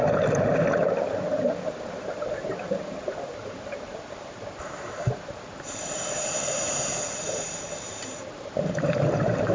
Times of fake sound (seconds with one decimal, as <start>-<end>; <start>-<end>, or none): 1.8-9.5